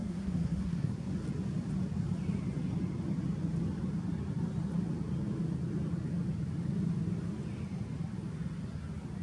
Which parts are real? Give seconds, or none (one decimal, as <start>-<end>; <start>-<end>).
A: 1.1-9.2